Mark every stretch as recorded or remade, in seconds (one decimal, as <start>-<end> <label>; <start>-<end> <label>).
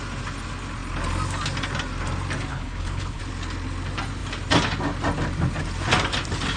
0.0-2.5 recorded; 2.5-3.2 remade; 3.2-6.6 recorded